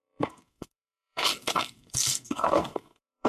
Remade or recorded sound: remade